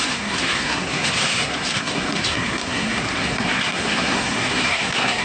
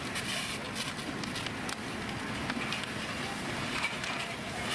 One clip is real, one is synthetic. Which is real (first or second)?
second